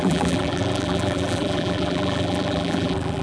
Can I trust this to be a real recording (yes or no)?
no